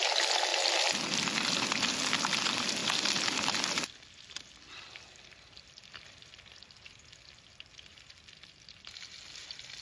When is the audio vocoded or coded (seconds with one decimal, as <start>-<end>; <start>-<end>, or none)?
none